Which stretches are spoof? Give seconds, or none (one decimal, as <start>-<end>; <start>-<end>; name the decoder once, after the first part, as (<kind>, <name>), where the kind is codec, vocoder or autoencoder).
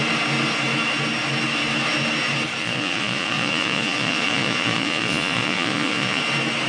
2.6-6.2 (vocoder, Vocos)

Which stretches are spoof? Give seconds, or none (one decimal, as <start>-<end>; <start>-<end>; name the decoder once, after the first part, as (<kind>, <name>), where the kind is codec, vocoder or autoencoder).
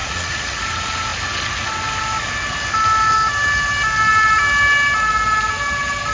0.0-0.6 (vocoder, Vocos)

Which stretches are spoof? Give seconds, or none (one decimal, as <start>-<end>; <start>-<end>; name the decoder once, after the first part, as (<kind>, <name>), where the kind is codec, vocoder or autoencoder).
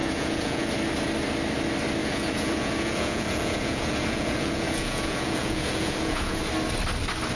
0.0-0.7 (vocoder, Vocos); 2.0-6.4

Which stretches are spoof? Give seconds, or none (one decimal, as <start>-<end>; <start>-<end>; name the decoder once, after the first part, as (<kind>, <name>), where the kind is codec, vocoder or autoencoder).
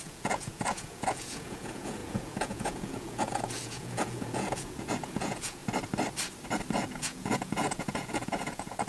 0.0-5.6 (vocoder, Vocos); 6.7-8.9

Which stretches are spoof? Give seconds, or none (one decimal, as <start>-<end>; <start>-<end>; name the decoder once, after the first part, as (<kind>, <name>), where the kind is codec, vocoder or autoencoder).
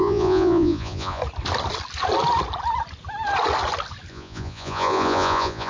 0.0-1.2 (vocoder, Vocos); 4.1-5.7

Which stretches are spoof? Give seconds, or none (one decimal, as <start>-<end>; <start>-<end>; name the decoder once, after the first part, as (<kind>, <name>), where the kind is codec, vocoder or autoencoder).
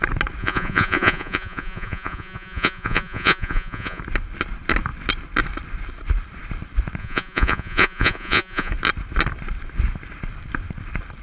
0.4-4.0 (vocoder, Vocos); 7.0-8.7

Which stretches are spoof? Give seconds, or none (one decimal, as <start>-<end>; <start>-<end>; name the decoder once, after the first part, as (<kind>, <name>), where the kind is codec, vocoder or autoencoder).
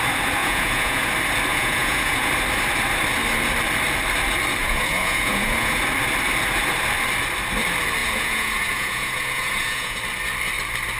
0.4-1.1 (vocoder, Vocos); 1.5-2.3; 4.6-5.8; 8.0-10.0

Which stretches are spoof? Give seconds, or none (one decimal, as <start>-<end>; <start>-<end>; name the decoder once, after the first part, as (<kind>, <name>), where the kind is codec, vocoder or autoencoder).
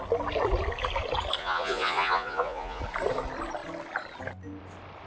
1.4-2.8 (vocoder, Vocos)